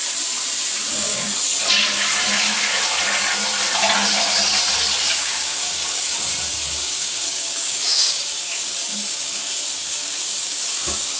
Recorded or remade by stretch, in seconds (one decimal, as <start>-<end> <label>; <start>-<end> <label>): 0.0-0.9 recorded; 0.9-1.3 remade; 1.3-2.3 recorded; 2.3-2.7 remade; 2.7-5.2 recorded; 5.2-6.3 remade; 6.3-6.8 recorded; 6.8-11.2 remade